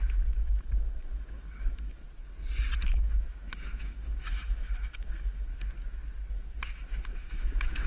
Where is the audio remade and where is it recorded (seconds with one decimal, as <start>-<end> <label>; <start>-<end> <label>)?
0.0-2.0 remade; 2.0-2.8 recorded; 2.8-5.5 remade; 5.5-6.3 recorded; 6.3-7.9 remade